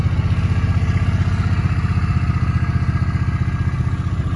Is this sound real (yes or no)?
yes